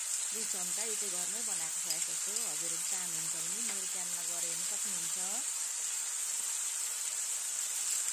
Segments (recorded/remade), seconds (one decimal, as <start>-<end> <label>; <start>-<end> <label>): 0.0-8.1 recorded